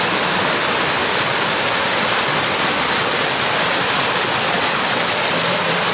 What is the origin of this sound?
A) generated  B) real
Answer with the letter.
B